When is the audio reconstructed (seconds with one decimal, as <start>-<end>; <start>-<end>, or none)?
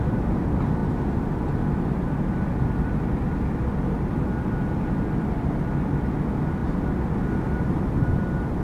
none